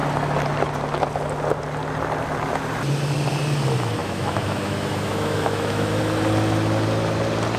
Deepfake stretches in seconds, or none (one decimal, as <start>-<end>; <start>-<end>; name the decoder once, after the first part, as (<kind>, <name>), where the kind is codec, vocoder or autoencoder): 4.0-6.0 (autoencoder, DAC-VAE)